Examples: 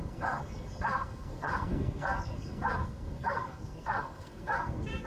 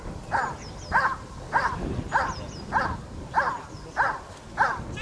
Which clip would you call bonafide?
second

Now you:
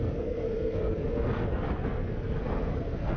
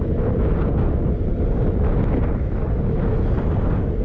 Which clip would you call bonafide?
second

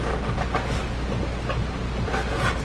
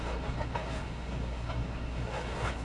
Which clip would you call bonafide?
first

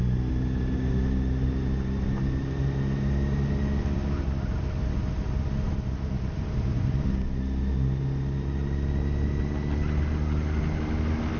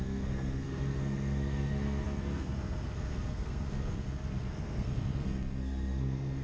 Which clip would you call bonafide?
first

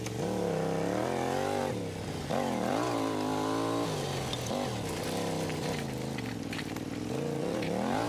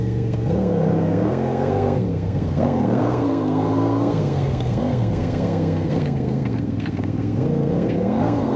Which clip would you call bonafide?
first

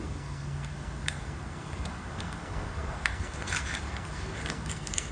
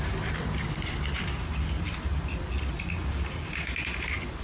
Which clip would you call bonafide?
second